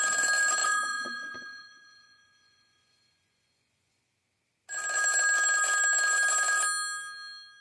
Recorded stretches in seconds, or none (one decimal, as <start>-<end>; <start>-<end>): 0.0-0.6; 4.0-7.6